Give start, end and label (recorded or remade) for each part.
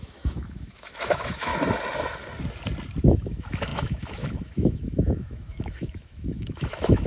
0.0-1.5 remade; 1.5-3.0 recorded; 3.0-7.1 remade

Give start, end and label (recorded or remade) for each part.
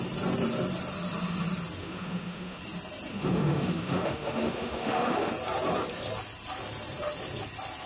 0.0-1.8 recorded; 1.8-2.6 remade; 2.6-3.1 recorded; 3.1-5.3 remade; 5.3-7.9 recorded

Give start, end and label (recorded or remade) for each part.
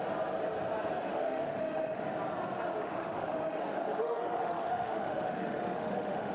0.0-1.1 recorded; 1.1-2.0 remade; 2.0-2.8 recorded; 2.8-3.6 remade; 3.6-4.0 recorded; 4.0-6.3 remade